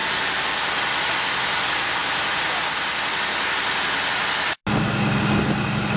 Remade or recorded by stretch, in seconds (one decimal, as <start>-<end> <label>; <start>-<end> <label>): 0.0-6.0 recorded